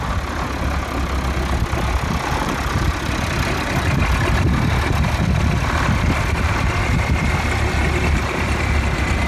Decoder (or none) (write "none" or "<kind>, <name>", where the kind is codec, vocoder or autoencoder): none